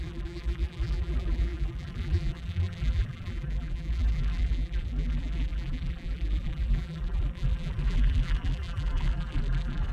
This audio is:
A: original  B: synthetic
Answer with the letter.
B